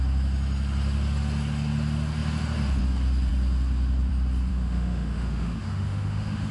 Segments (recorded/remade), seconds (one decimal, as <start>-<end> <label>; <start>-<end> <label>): 0.0-4.5 recorded; 4.5-6.5 remade